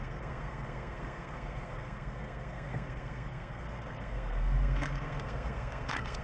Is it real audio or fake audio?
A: fake